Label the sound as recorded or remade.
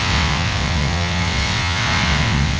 remade